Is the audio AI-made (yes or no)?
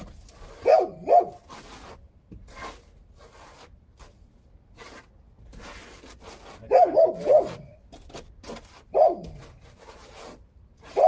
no